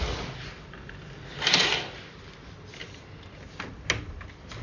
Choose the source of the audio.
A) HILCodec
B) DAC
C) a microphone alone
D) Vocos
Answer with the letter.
C